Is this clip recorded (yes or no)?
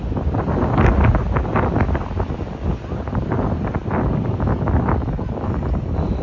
yes